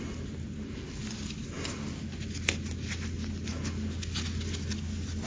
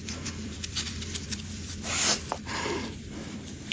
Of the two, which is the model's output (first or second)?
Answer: second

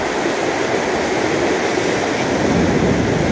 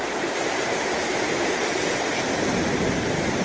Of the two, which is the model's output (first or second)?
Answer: second